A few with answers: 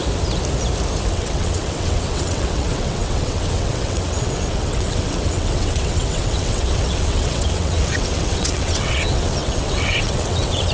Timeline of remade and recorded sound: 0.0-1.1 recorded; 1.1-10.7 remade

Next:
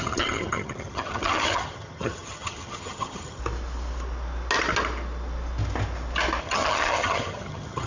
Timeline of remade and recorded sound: 0.0-3.4 remade; 3.4-6.4 recorded; 6.4-7.9 remade

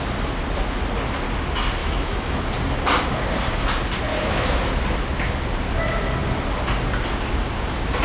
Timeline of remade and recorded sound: 0.0-1.8 recorded; 1.8-2.5 remade; 2.5-4.1 recorded; 4.1-4.6 remade; 4.6-8.0 recorded

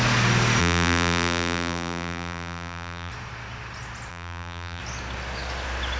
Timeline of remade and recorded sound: 0.0-0.6 recorded; 0.6-3.1 remade; 3.1-4.1 recorded; 4.1-4.8 remade; 4.8-6.0 recorded

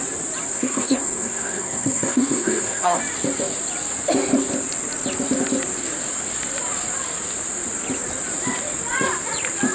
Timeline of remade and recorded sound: 0.0-0.5 recorded; 0.5-3.0 remade; 3.0-9.7 recorded

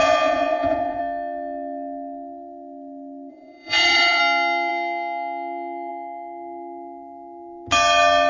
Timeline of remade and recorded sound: 0.0-1.0 remade; 1.0-3.3 recorded; 3.3-4.2 remade; 4.2-8.3 recorded

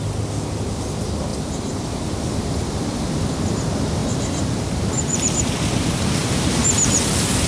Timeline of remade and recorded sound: 0.0-4.0 recorded; 4.0-5.4 remade; 5.4-6.2 recorded; 6.2-6.9 remade; 6.9-7.5 recorded